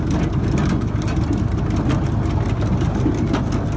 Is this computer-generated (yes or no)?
no